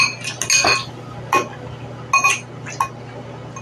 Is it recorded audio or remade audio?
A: recorded